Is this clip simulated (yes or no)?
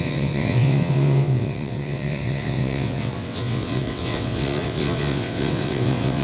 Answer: yes